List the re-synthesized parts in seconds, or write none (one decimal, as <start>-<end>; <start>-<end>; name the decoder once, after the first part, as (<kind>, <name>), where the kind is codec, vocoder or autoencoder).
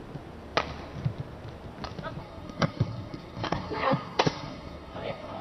2.2-5.4 (codec, SNAC)